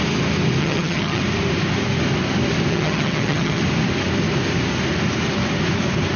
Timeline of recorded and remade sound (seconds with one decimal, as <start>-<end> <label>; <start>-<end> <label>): 0.0-0.6 recorded; 0.6-1.2 remade; 1.2-2.7 recorded; 2.7-3.6 remade; 3.6-6.2 recorded